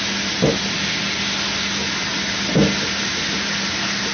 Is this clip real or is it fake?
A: real